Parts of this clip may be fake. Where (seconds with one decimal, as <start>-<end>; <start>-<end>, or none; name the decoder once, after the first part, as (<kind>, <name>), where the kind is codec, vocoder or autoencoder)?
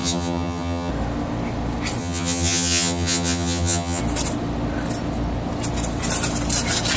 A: 0.0-0.9 (vocoder, HiFi-GAN); 2.0-4.0